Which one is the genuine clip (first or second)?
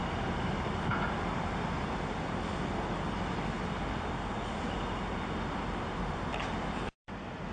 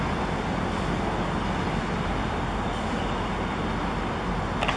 second